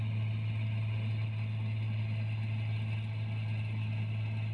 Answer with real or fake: real